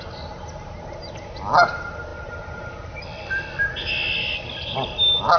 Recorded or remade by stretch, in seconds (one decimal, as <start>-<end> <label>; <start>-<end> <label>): 0.0-5.4 recorded